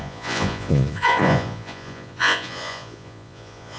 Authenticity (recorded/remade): remade